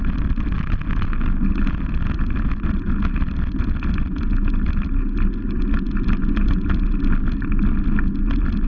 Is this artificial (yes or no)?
no